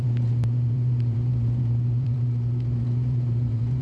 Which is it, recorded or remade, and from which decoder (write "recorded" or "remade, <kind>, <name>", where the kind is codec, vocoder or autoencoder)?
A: remade, vocoder, BigVGAN v2